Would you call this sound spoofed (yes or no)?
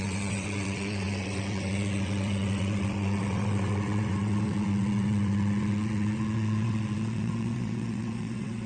yes